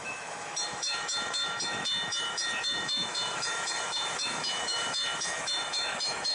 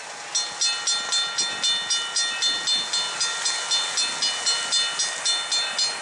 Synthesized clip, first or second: first